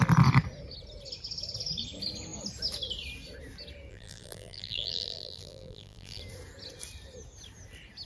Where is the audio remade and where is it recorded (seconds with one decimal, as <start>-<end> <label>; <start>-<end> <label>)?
0.0-3.9 recorded; 3.9-6.2 remade; 6.2-8.1 recorded